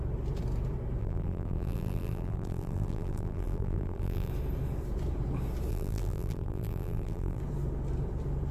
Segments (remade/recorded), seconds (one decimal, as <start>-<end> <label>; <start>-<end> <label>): 0.0-1.0 recorded; 1.0-4.3 remade; 4.3-5.7 recorded; 5.7-7.4 remade; 7.4-8.5 recorded